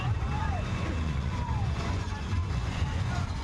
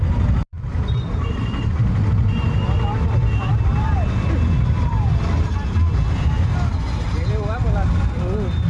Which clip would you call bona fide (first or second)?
second